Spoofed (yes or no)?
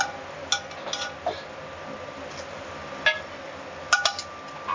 no